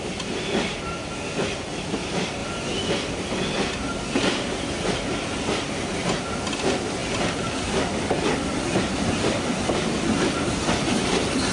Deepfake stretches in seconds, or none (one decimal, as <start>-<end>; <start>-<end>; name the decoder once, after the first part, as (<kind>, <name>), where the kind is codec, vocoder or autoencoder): none